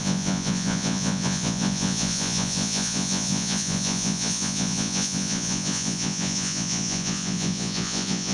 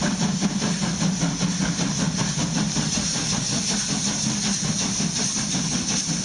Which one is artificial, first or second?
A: first